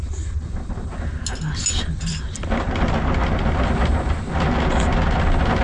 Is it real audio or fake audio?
real